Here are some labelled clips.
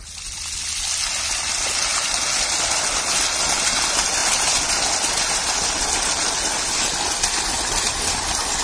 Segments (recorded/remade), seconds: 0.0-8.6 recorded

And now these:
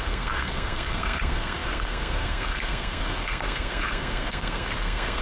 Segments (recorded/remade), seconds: 0.0-5.2 remade